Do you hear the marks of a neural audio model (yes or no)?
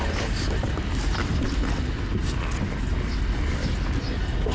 no